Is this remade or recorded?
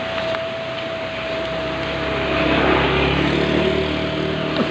recorded